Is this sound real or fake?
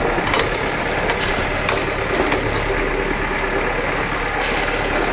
real